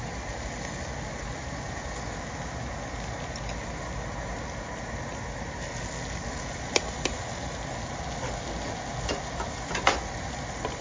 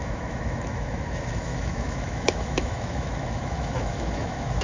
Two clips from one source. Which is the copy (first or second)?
second